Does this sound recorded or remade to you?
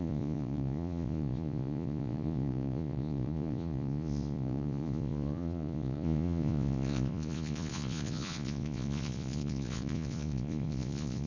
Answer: remade